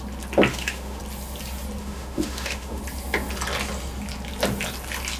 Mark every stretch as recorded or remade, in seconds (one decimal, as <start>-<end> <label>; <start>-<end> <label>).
0.0-0.5 recorded; 0.5-1.0 remade; 1.0-1.8 recorded; 1.8-2.8 remade; 2.8-5.2 recorded